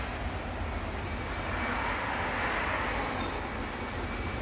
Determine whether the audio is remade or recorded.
recorded